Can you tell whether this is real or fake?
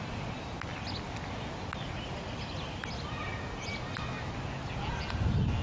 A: real